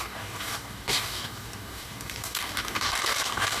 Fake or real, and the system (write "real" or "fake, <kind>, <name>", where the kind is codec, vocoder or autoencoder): fake, codec, DAC